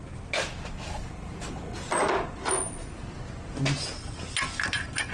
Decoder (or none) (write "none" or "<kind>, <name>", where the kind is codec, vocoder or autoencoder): none